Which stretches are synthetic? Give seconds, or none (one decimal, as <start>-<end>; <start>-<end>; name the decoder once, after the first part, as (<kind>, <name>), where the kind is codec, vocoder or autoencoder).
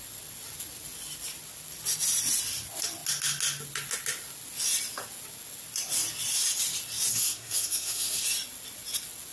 7.1-8.2 (codec, SNAC)